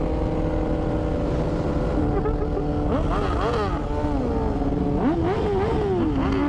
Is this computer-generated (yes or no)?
no